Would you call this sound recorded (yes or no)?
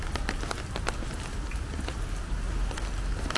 yes